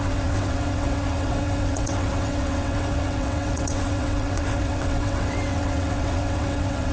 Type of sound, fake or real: fake